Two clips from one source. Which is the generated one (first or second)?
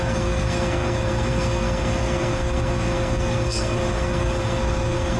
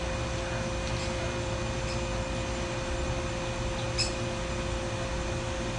first